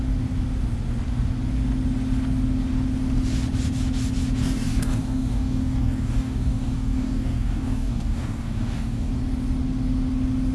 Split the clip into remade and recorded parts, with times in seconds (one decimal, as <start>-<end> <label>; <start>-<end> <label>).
0.0-4.4 recorded; 4.4-9.1 remade; 9.1-10.5 recorded